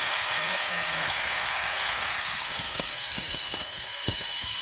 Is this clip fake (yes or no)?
yes